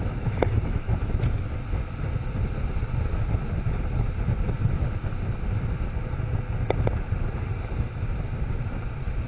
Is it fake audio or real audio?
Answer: real